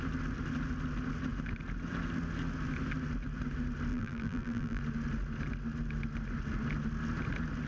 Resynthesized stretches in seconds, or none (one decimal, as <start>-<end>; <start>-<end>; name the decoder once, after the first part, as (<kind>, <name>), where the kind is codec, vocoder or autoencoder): 3.9-4.8 (vocoder, BigVGAN v2)